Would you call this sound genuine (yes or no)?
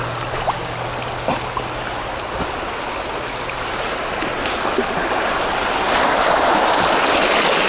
yes